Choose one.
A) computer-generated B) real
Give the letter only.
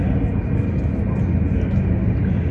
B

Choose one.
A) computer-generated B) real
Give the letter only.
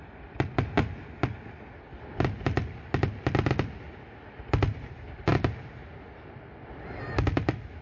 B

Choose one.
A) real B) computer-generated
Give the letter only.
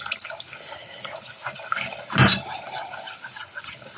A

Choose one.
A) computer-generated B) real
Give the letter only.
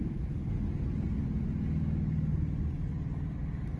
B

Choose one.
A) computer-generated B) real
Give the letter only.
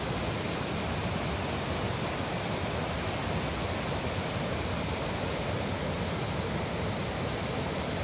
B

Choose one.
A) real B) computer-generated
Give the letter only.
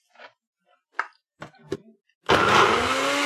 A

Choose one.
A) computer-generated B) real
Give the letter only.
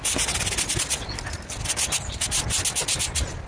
B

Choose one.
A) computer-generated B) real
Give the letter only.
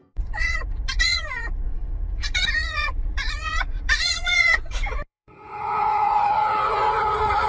A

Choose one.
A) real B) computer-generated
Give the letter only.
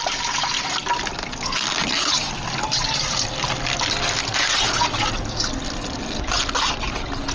A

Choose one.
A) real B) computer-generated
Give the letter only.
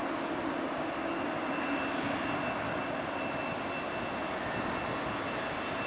A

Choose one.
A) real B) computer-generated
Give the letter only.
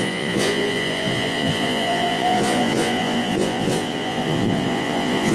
B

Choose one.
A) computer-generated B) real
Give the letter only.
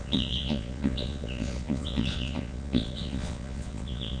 A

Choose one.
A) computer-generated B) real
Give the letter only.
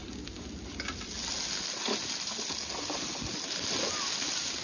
B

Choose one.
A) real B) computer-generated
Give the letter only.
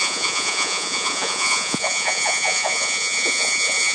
B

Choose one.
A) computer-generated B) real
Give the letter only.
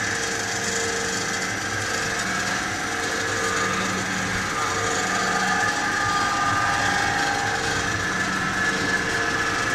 B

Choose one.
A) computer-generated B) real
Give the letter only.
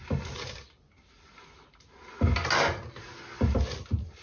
B